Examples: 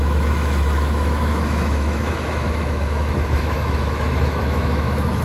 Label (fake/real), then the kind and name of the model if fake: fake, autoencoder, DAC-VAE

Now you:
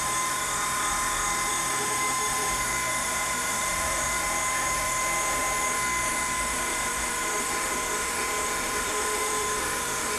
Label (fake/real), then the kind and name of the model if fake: fake, autoencoder, DAC-VAE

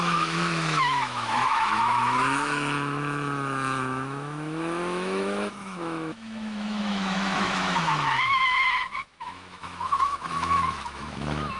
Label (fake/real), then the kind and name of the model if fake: fake, autoencoder, DAC-VAE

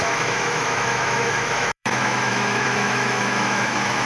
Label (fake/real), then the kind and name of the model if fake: fake, autoencoder, DAC-VAE